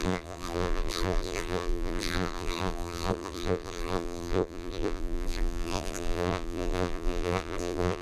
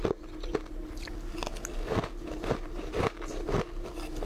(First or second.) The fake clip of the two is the first